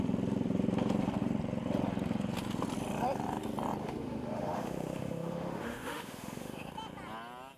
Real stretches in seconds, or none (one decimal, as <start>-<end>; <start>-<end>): 0.0-3.8; 6.7-7.6